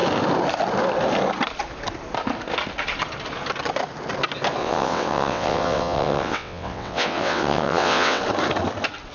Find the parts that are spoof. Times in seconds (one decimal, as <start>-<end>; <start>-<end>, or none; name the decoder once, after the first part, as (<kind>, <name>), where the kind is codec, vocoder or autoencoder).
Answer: 4.6-8.2 (vocoder, WaveNeXt)